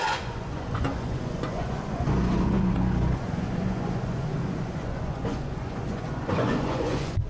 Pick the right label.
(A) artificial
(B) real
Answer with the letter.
A